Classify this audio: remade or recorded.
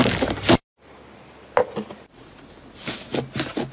recorded